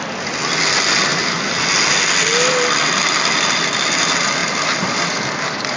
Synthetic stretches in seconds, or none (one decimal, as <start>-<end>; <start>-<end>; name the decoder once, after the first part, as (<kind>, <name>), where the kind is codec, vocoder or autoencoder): none